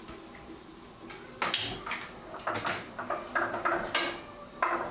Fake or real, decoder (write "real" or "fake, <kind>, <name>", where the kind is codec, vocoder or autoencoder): real